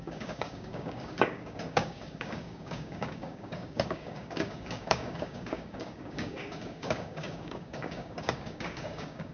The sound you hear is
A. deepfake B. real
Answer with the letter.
A